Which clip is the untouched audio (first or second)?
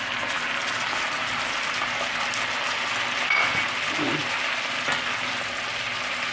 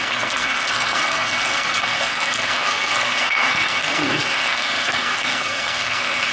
first